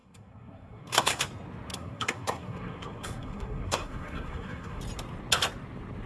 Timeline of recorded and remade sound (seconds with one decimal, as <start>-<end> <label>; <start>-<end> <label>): 0.0-1.2 remade; 1.2-1.7 recorded; 1.7-4.8 remade; 4.8-6.1 recorded